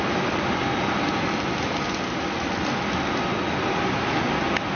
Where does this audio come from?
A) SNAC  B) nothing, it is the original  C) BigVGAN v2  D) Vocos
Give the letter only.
B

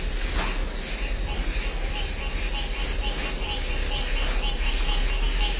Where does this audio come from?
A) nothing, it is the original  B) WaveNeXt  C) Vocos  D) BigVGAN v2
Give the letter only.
A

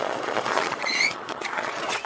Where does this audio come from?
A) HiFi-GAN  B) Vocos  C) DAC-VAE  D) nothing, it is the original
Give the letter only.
B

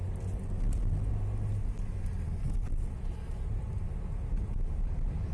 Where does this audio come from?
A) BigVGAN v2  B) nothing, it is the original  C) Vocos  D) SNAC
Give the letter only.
B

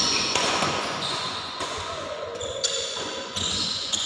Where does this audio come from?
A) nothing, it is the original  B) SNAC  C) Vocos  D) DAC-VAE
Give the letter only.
C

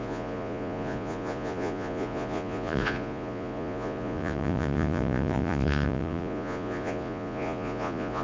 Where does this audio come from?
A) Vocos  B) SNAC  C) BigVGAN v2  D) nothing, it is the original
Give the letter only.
A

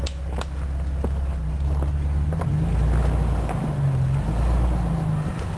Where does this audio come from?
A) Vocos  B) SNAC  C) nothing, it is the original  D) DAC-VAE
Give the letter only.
C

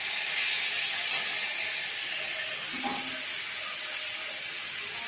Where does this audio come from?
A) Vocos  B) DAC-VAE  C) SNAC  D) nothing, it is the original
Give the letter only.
D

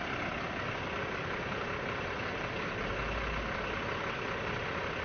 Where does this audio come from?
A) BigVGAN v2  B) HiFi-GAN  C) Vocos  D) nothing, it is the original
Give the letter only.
D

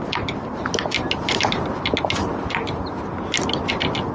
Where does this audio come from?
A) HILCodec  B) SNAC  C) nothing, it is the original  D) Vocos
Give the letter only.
C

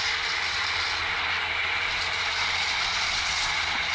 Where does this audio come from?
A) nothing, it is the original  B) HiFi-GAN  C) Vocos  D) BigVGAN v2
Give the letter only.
A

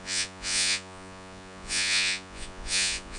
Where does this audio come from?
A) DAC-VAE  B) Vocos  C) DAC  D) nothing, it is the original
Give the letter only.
B